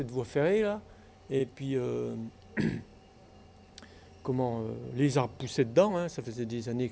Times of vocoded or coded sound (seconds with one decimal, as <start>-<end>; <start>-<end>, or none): 1.4-2.3

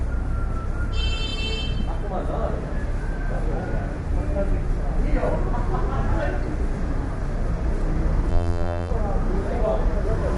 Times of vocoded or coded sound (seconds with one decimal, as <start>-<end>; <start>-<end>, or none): 8.3-8.9